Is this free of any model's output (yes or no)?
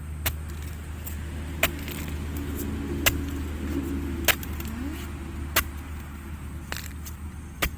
yes